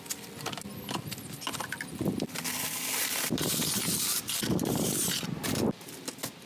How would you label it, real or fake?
real